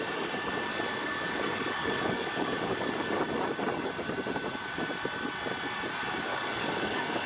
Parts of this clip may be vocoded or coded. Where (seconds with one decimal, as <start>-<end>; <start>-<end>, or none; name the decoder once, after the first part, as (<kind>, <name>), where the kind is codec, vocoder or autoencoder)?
1.0-3.2 (codec, DAC); 6.3-7.3